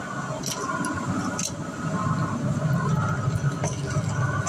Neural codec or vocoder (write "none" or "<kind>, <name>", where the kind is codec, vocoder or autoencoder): none